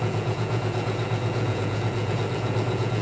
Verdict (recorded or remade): remade